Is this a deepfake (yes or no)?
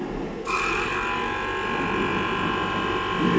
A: no